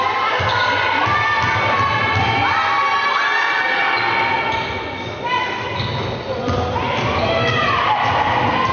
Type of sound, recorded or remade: recorded